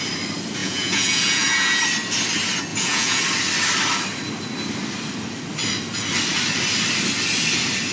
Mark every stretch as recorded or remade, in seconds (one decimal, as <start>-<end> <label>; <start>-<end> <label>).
0.0-0.6 recorded; 0.6-1.8 remade; 1.8-2.7 recorded; 2.7-3.2 remade; 3.2-7.9 recorded